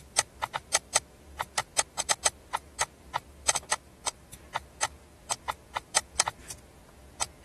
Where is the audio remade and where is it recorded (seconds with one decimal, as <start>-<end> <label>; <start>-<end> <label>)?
0.0-6.8 remade; 6.8-7.4 recorded